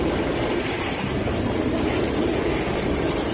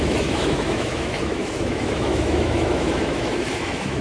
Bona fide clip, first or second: first